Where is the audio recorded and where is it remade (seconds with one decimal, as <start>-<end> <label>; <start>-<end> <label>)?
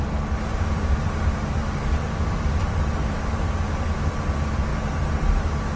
0.0-0.5 recorded; 0.5-4.0 remade; 4.0-5.8 recorded